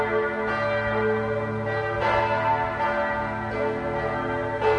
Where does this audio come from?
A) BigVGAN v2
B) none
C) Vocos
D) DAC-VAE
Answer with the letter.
B